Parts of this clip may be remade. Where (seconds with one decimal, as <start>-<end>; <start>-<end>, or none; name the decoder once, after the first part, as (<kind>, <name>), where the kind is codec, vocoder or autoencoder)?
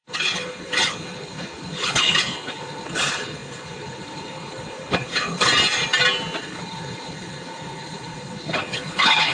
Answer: 0.0-5.5 (codec, HILCodec); 6.4-9.3